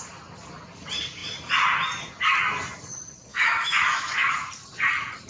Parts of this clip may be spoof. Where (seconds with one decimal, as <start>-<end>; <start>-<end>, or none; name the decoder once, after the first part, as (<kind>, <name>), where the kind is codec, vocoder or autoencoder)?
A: 3.3-4.5 (autoencoder, DAC-VAE)